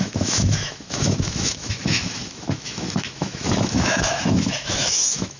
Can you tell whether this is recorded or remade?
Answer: remade